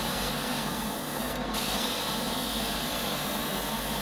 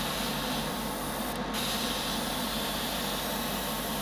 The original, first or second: second